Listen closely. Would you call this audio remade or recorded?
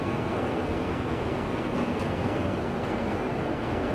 remade